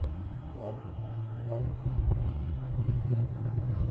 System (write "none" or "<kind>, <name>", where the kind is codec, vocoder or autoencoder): codec, SNAC